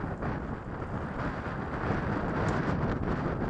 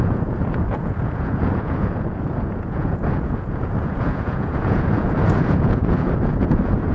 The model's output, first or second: second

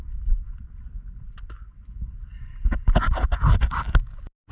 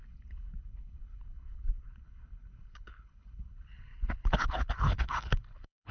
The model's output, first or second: second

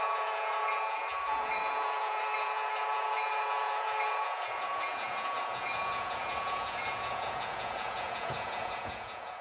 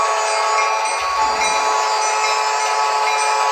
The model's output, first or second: first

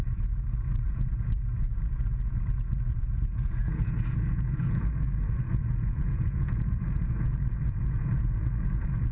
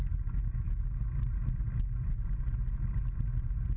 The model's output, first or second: first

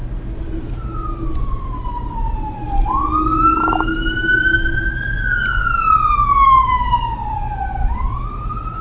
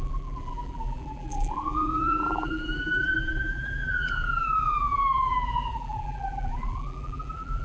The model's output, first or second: second